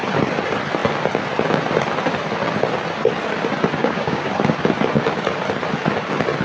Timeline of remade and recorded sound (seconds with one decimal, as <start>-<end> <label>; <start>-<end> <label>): 0.0-3.8 recorded; 3.8-4.3 remade; 4.3-6.4 recorded